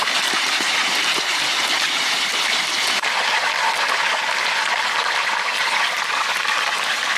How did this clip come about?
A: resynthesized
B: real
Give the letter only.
B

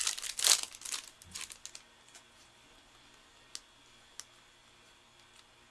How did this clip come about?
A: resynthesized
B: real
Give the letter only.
B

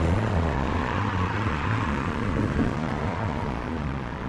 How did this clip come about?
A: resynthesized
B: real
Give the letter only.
A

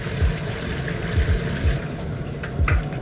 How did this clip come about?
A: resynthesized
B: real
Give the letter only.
B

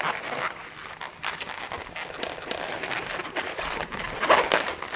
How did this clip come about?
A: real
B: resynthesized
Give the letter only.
A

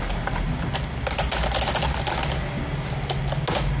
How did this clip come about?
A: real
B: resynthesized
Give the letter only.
A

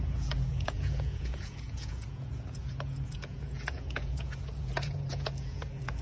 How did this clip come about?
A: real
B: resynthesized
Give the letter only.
B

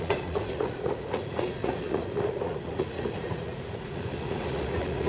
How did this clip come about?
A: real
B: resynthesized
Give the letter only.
B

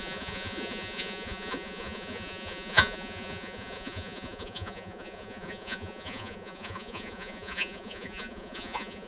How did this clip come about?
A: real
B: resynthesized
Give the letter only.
B